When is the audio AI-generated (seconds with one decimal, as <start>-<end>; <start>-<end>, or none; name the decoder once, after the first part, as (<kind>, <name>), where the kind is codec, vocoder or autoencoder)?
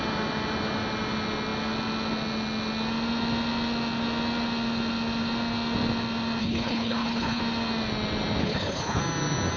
6.4-7.4 (codec, HILCodec); 8.4-9.0